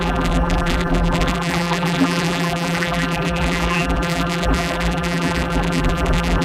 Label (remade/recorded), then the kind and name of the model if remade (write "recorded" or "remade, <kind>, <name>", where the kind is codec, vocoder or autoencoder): remade, vocoder, BigVGAN v2